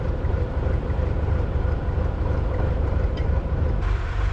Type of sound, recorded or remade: remade